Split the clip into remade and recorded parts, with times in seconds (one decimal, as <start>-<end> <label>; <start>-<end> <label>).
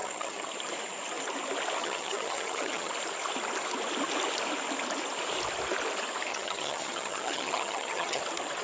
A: 0.0-0.5 remade; 0.5-1.8 recorded; 1.8-2.9 remade; 2.9-6.3 recorded; 6.3-8.2 remade; 8.2-8.6 recorded